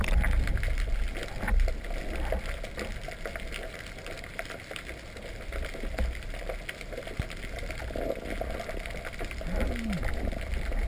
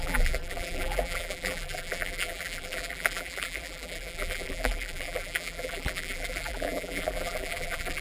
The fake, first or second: second